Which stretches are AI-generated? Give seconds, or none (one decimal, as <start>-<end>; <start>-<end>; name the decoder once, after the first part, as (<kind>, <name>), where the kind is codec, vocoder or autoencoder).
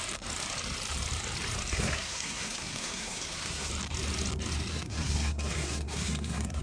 1.7-3.7 (codec, SNAC); 4.7-6.6